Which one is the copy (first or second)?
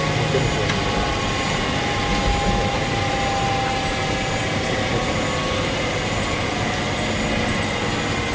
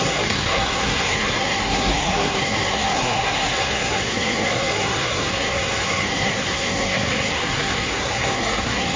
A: second